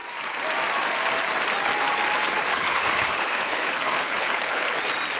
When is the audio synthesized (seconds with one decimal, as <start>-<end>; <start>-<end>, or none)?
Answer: 2.5-4.7